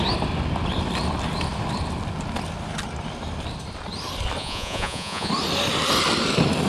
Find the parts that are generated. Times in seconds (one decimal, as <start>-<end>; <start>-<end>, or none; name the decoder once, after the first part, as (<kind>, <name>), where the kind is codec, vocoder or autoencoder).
4.4-5.3 (vocoder, Vocos)